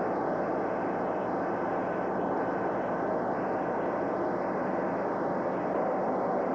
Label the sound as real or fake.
real